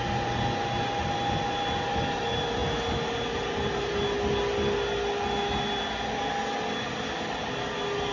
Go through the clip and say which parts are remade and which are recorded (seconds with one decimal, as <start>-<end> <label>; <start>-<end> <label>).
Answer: 0.0-8.1 recorded